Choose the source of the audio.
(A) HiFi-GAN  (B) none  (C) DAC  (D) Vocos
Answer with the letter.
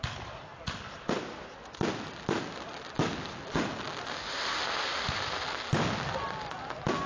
B